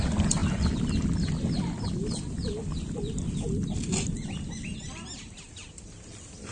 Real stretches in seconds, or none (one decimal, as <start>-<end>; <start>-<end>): 0.4-1.9; 5.6-6.5